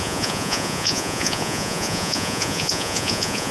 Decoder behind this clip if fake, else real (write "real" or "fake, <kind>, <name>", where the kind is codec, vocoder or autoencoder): fake, vocoder, Vocos